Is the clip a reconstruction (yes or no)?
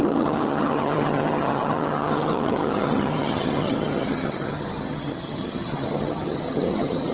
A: yes